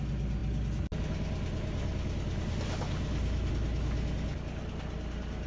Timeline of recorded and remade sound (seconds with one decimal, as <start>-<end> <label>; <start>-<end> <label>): 0.0-5.5 recorded